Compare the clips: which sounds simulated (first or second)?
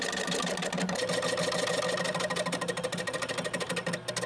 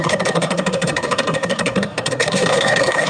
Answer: second